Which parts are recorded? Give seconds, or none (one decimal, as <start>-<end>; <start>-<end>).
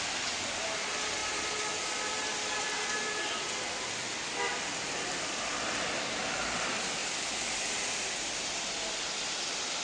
0.0-1.2; 4.6-7.0; 8.0-9.8